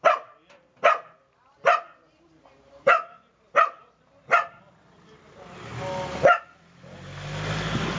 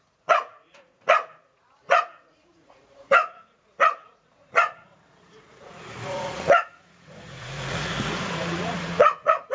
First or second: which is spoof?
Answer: second